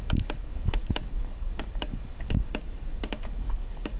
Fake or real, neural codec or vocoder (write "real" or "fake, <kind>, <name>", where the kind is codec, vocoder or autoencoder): fake, codec, DAC